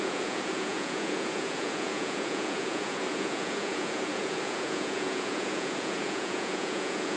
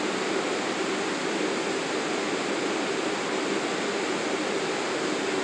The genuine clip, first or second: second